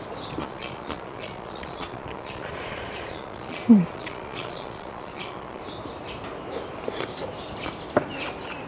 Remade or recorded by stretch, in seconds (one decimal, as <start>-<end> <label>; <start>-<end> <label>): 0.0-0.4 recorded; 0.4-5.6 remade; 5.6-8.7 recorded

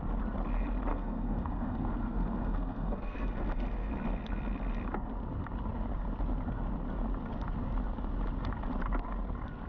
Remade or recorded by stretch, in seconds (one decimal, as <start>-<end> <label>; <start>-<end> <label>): 0.0-0.9 recorded; 0.9-3.9 remade; 3.9-9.7 recorded

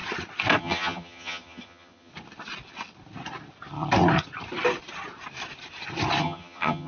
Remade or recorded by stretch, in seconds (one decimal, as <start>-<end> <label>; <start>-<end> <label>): 0.0-0.6 recorded; 0.6-2.1 remade; 2.1-6.2 recorded; 6.2-6.9 remade

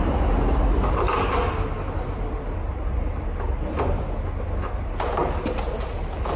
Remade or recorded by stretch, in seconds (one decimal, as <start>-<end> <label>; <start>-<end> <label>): 0.0-6.4 recorded